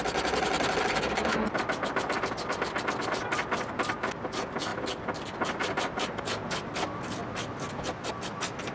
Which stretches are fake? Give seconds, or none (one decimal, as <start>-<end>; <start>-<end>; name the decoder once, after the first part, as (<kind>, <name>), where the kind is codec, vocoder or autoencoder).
0.0-7.2 (vocoder, BigVGAN v2); 8.1-8.7